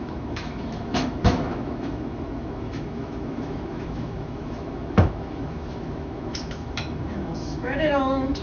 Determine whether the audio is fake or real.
fake